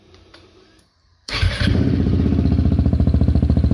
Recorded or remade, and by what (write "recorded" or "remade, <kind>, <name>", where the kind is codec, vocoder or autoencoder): remade, vocoder, BigVGAN v2